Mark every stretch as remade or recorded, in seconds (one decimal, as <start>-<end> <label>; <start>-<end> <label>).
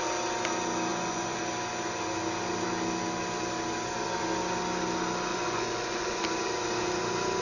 0.0-0.9 recorded; 0.9-1.4 remade; 1.4-5.3 recorded; 5.3-6.2 remade; 6.2-7.4 recorded